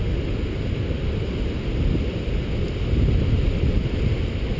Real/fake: real